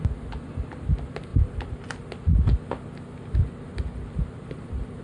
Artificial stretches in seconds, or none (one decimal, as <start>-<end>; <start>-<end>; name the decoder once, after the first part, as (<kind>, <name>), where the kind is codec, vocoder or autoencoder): none